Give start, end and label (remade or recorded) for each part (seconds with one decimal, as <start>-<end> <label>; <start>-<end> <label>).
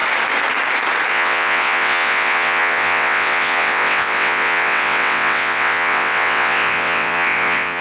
0.0-1.1 recorded; 1.1-7.8 remade